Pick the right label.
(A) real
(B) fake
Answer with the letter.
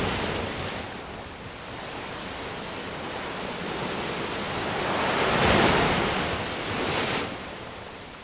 A